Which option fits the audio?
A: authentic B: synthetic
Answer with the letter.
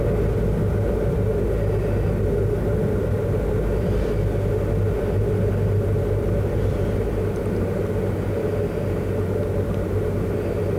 A